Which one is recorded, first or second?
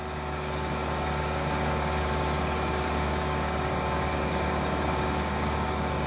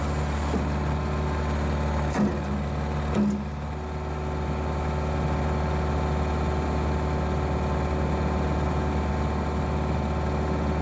second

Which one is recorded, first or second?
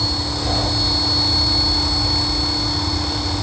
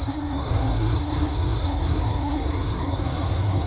first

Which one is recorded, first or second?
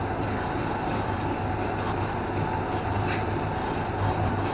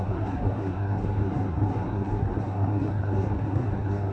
first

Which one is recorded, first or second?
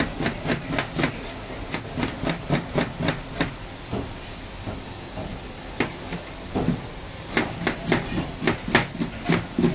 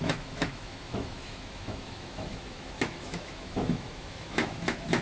first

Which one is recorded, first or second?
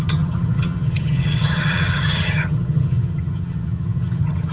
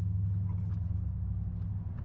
second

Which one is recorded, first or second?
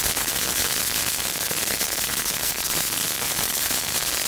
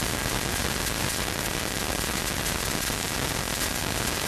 second